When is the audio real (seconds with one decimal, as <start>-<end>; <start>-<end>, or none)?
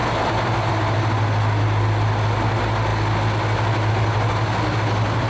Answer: 0.0-5.3